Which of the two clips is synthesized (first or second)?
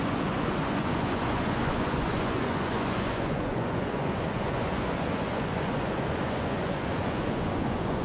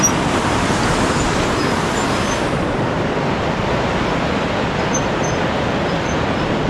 first